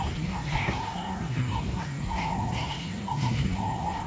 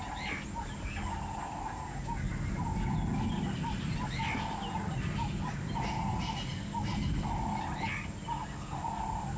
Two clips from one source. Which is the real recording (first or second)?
second